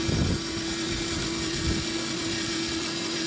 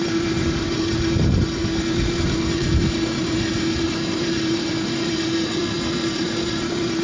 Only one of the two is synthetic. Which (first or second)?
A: second